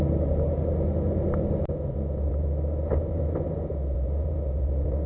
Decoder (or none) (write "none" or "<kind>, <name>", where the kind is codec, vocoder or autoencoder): none